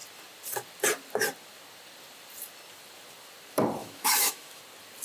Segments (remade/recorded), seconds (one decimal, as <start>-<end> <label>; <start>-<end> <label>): 0.0-3.8 recorded; 3.8-4.6 remade; 4.6-5.0 recorded

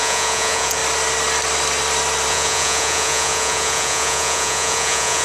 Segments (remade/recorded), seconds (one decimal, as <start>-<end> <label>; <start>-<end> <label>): 0.0-0.8 remade; 0.8-2.3 recorded; 2.3-5.2 remade

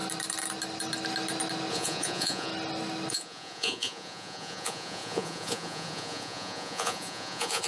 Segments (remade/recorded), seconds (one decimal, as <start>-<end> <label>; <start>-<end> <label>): 0.0-1.7 recorded; 1.7-2.5 remade; 2.5-3.1 recorded; 3.1-7.7 remade